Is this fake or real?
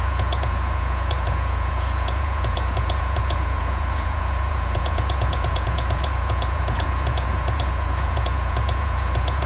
fake